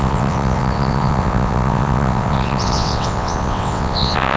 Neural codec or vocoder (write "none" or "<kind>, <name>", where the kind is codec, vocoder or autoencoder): vocoder, WaveNeXt